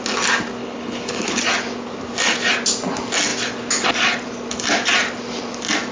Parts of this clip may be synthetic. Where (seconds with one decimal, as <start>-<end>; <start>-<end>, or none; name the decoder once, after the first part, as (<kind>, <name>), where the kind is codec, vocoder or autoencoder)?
0.6-1.4 (codec, HILCodec)